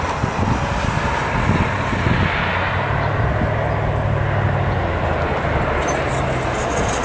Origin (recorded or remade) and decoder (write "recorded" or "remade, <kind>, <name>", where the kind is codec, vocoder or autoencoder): recorded